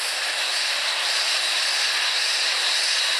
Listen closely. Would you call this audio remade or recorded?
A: remade